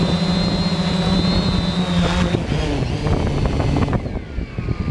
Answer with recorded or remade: recorded